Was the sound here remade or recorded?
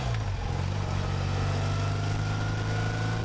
recorded